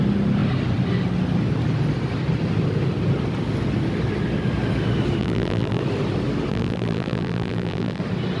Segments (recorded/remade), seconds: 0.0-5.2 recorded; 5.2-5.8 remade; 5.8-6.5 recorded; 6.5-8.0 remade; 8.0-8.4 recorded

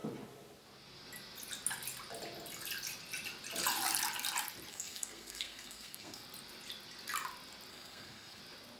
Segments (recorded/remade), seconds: 0.0-4.7 recorded; 4.7-6.2 remade; 6.2-7.7 recorded; 7.7-8.4 remade; 8.4-8.8 recorded

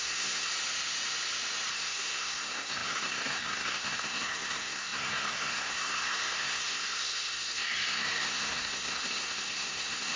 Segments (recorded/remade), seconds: 0.0-0.5 remade; 0.5-1.7 recorded; 1.7-10.2 remade

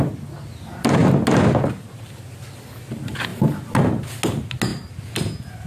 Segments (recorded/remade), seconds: 0.0-5.7 recorded

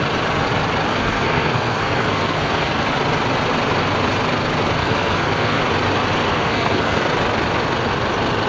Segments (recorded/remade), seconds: 0.0-0.9 recorded; 0.9-2.9 remade; 2.9-4.8 recorded; 4.8-5.6 remade; 5.6-6.3 recorded; 6.3-7.1 remade; 7.1-8.5 recorded

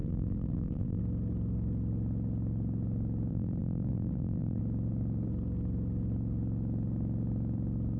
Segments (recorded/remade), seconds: 0.0-1.0 remade; 1.0-3.3 recorded; 3.3-4.6 remade; 4.6-8.0 recorded

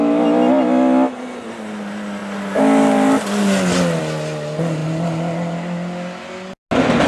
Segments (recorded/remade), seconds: 0.0-7.1 recorded